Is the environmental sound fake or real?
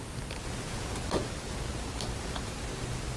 real